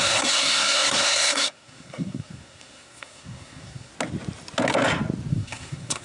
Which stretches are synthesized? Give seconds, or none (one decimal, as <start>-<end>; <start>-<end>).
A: 0.0-3.9; 5.3-6.0